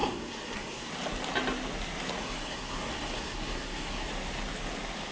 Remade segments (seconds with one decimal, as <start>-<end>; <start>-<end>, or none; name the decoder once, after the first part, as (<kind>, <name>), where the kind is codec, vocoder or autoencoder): 0.0-0.9 (codec, SNAC); 2.2-4.1